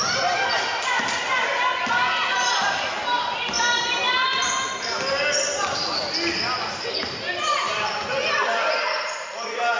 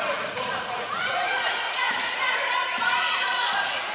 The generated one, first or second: second